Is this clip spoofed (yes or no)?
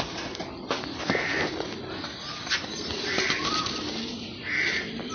no